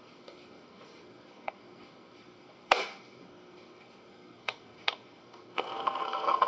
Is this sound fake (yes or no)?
yes